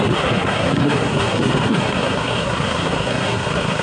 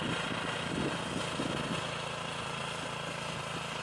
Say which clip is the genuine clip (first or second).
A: second